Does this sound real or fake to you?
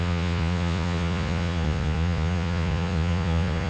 fake